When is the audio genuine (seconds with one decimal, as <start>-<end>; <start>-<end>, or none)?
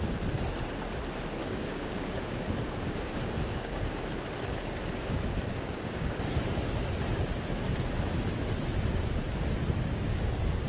0.0-1.4; 4.0-5.5; 6.2-9.9